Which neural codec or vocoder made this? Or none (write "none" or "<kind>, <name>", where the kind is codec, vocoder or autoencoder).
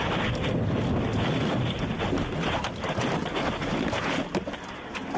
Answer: none